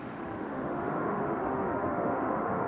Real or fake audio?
fake